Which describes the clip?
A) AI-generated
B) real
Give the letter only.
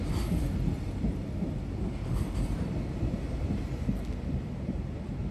B